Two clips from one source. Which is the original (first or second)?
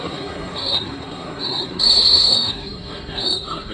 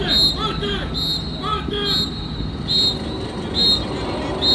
second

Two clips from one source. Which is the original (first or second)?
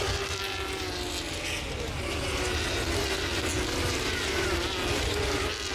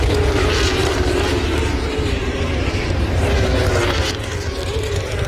first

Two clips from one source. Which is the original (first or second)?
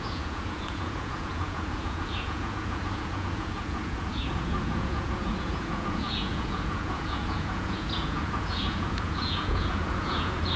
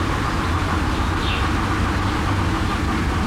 second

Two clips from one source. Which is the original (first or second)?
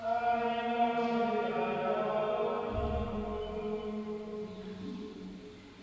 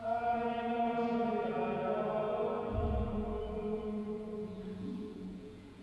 first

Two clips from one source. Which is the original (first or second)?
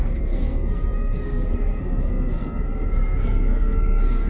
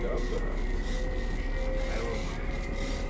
second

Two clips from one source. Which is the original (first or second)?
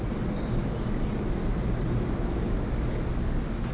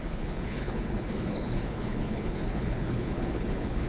first